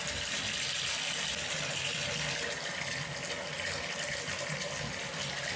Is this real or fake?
real